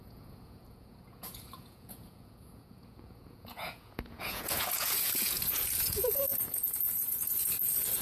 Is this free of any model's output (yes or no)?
no